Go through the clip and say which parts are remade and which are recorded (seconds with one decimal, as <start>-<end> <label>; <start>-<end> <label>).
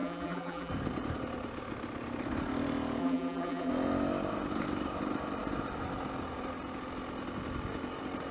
0.0-0.7 remade; 0.7-3.0 recorded; 3.0-3.7 remade; 3.7-8.3 recorded